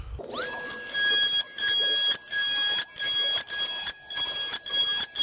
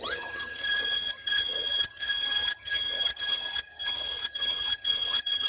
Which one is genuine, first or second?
first